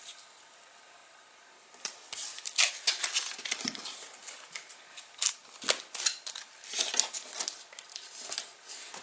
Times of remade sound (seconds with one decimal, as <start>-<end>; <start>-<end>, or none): none